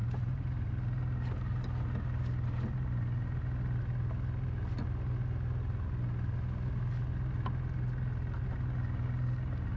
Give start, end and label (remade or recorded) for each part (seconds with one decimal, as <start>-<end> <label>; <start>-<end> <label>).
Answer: 0.0-0.7 remade; 0.7-9.8 recorded